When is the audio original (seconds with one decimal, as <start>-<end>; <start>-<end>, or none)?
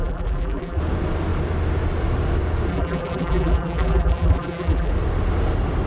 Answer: 0.8-2.7; 4.9-5.9